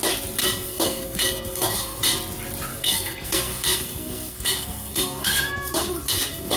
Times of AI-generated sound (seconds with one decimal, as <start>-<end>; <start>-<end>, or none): 0.4-2.0; 2.7-6.6